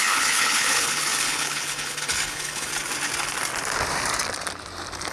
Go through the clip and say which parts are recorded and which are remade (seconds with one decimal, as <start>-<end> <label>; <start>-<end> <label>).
0.0-2.7 remade; 2.7-5.1 recorded